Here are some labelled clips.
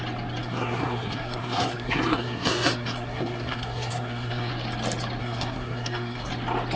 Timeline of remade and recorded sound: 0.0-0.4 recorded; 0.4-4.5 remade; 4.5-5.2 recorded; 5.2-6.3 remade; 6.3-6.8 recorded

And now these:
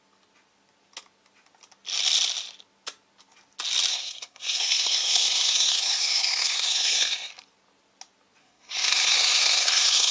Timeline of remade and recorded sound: 0.0-3.9 recorded; 3.9-7.3 remade; 7.3-8.4 recorded; 8.4-10.1 remade

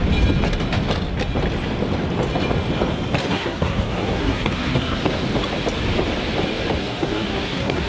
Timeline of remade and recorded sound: 0.0-3.2 recorded; 3.2-5.0 remade; 5.0-6.8 recorded; 6.8-7.9 remade

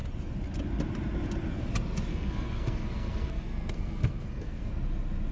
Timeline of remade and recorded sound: 0.0-2.1 recorded; 2.1-4.7 remade; 4.7-5.3 recorded